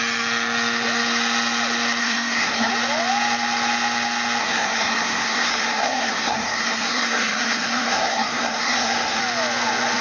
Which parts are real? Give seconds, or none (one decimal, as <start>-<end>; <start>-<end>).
0.0-2.0; 2.7-4.4; 9.2-10.0